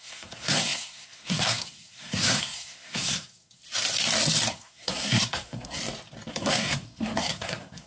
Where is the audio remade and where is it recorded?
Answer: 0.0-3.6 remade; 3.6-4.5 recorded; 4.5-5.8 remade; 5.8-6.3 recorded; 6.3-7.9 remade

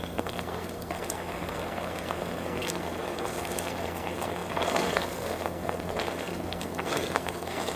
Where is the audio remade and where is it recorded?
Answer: 0.0-7.8 remade

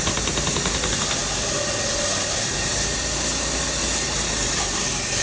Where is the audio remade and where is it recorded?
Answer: 0.0-5.2 recorded

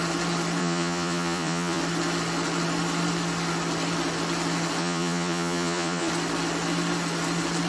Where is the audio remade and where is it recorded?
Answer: 0.0-0.6 recorded; 0.6-1.8 remade; 1.8-4.8 recorded; 4.8-6.1 remade; 6.1-7.7 recorded

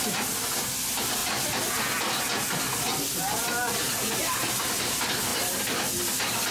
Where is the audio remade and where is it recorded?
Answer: 0.0-6.5 recorded

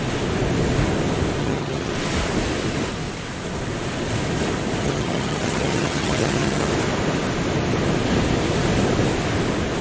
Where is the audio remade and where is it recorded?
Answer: 0.0-1.4 recorded; 1.4-1.9 remade; 1.9-4.8 recorded; 4.8-6.7 remade; 6.7-9.8 recorded

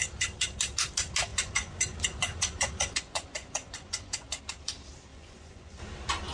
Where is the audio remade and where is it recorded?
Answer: 0.0-1.3 recorded; 1.3-4.4 remade; 4.4-5.1 recorded; 5.1-5.8 remade; 5.8-6.3 recorded

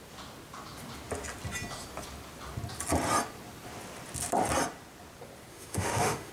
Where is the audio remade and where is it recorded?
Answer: 0.0-5.5 recorded; 5.5-6.3 remade